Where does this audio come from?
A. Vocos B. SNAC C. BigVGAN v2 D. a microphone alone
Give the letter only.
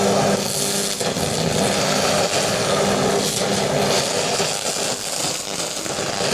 D